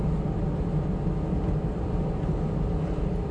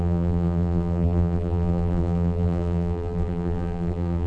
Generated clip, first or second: second